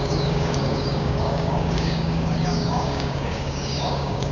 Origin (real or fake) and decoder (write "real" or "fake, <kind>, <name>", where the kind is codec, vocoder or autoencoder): fake, codec, DAC